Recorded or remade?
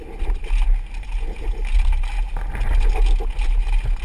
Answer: recorded